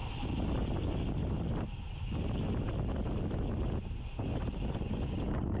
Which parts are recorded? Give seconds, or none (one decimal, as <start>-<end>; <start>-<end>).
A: 0.0-5.6